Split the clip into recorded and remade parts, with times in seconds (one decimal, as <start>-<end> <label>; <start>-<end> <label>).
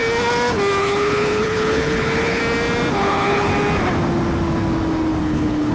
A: 0.0-0.8 recorded; 0.8-2.4 remade; 2.4-2.9 recorded; 2.9-3.5 remade; 3.5-5.2 recorded; 5.2-5.7 remade